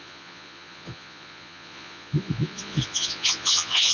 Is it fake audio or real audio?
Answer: fake